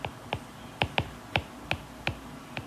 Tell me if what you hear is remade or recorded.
recorded